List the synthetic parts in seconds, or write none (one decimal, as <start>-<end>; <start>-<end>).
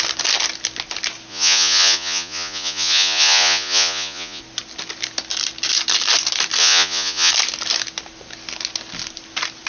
1.3-4.4; 6.6-7.3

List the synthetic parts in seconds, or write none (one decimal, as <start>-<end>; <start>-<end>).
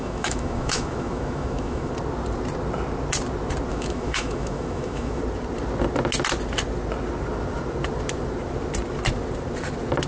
0.0-1.9; 3.7-5.2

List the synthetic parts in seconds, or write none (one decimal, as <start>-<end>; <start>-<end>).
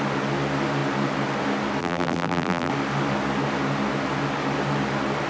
1.8-2.7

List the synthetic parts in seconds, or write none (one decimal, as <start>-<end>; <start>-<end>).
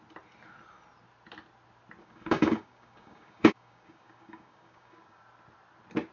2.0-5.2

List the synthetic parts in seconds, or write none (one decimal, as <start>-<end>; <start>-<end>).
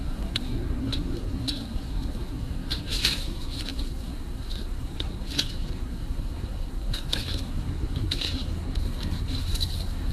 0.0-10.1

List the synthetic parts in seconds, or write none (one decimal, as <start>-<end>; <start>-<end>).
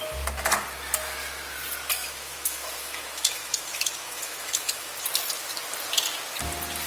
2.0-4.9